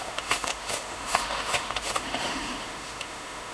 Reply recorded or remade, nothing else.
remade